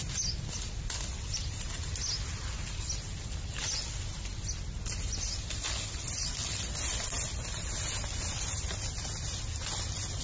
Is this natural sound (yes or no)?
yes